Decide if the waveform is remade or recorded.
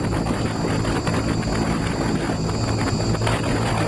recorded